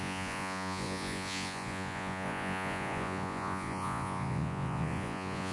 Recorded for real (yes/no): no